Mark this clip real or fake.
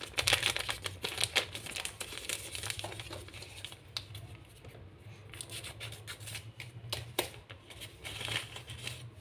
real